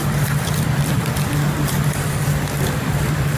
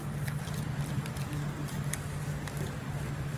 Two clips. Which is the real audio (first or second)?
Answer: second